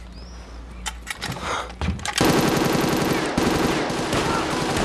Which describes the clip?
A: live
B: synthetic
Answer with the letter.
A